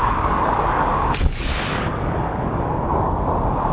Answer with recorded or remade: remade